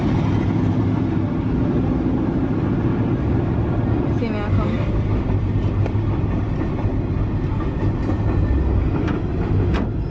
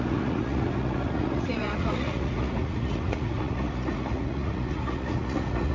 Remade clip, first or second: second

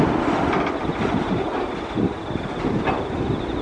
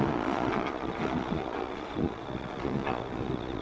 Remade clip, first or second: second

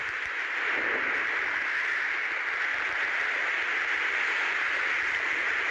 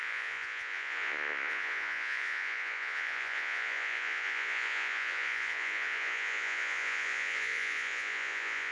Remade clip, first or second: second